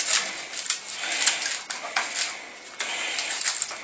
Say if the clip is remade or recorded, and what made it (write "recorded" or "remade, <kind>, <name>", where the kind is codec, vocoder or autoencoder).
recorded